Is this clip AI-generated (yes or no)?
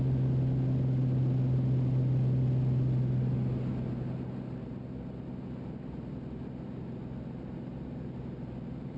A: no